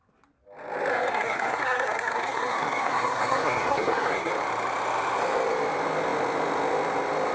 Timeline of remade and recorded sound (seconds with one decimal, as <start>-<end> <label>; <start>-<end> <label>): 0.0-0.9 recorded; 0.9-4.3 remade; 4.3-7.3 recorded